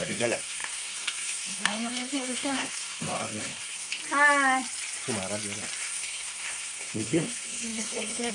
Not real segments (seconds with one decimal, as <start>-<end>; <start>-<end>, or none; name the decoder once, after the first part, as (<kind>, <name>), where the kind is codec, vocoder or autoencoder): 0.0-4.0 (codec, SNAC); 5.8-8.3